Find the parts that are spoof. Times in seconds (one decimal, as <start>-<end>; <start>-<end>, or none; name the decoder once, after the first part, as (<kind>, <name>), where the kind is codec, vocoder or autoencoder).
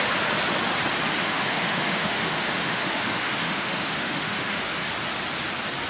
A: 1.2-4.7 (autoencoder, DAC-VAE)